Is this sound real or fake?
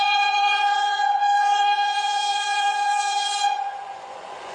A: fake